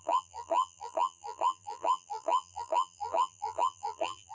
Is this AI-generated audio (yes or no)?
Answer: yes